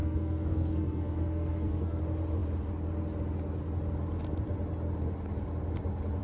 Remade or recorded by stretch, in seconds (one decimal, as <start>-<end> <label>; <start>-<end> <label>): 0.0-2.0 remade; 2.0-6.2 recorded